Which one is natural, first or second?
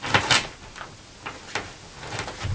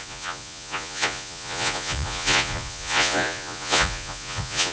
first